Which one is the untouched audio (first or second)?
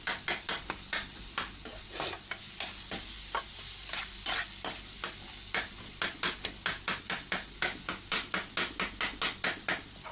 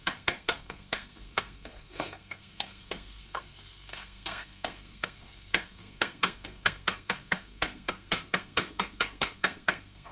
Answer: first